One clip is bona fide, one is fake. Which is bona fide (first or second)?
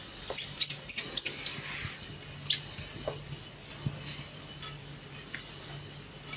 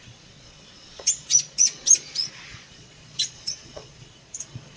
first